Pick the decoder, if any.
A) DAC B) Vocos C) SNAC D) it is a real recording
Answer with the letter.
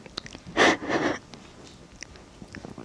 D